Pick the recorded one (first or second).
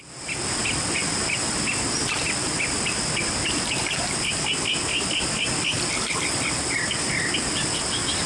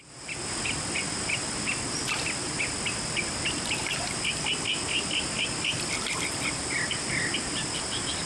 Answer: first